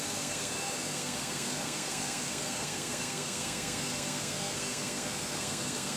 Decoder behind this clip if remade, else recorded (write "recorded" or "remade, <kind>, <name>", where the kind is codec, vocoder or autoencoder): remade, codec, SNAC